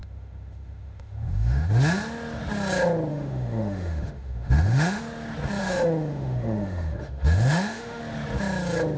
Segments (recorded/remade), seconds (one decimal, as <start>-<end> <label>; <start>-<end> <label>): 0.0-1.7 remade; 1.7-3.1 recorded; 3.1-5.0 remade; 5.0-5.6 recorded; 5.6-8.0 remade; 8.0-9.0 recorded